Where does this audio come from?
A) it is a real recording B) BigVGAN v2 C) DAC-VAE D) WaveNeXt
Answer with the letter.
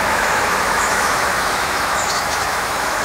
C